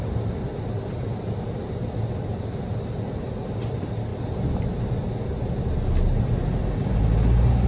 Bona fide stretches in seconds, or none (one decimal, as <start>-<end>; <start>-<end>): 0.0-7.7